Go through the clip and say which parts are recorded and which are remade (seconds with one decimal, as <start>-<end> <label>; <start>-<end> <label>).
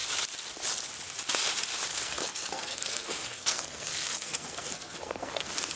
0.0-1.9 recorded; 1.9-5.8 remade